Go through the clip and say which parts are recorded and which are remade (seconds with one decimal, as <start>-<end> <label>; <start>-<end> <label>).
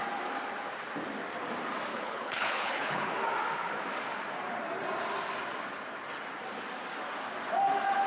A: 0.0-1.9 recorded; 1.9-3.1 remade; 3.1-8.1 recorded